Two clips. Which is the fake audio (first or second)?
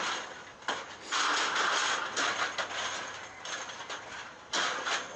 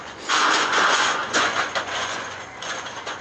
second